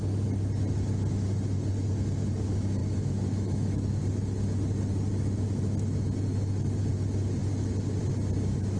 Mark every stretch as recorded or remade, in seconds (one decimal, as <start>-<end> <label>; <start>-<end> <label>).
0.0-2.8 recorded; 2.8-4.0 remade; 4.0-8.8 recorded